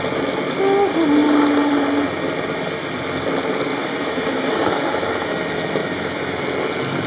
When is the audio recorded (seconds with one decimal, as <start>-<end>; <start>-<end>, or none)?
0.0-3.8; 5.3-5.8; 6.4-7.1